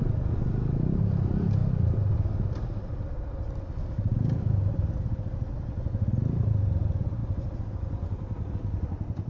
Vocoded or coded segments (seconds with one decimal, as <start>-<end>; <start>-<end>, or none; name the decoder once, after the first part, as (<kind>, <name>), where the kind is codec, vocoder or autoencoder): none